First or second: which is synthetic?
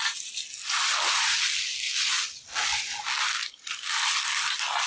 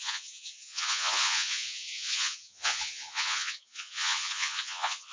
second